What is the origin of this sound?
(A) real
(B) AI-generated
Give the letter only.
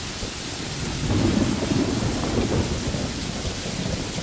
A